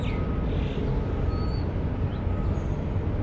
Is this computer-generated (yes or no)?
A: no